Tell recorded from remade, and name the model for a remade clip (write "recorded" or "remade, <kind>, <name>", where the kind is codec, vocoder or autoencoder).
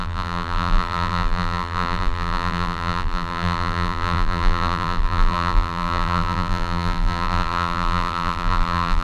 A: remade, vocoder, BigVGAN v2